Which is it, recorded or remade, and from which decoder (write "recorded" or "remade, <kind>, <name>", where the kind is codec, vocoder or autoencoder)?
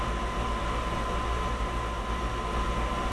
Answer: recorded